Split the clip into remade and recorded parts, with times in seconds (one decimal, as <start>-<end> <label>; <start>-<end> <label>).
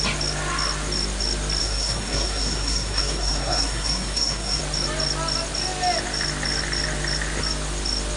0.0-1.6 recorded; 1.6-4.6 remade; 4.6-8.2 recorded